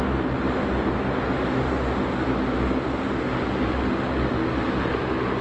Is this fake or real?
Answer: real